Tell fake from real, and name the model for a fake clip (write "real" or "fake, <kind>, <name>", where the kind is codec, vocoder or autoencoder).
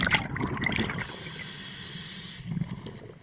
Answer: real